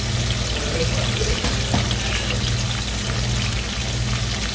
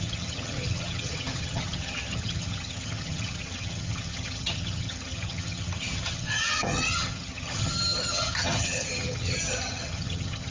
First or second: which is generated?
second